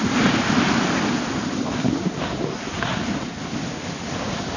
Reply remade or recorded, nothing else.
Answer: recorded